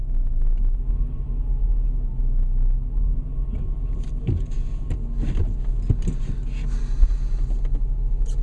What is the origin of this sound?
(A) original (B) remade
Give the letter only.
A